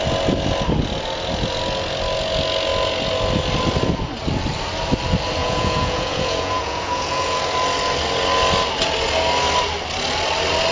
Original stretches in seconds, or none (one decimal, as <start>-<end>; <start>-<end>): 0.0-5.4; 7.4-10.7